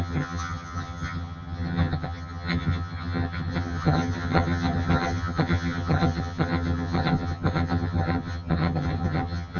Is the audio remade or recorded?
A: remade